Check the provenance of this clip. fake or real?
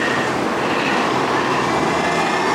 real